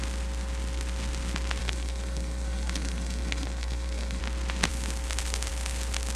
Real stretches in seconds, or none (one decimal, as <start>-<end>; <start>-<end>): 0.0-1.6; 4.2-6.2